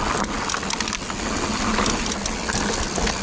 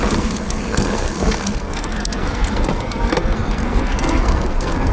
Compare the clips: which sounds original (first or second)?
first